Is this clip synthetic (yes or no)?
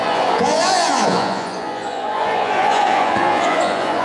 yes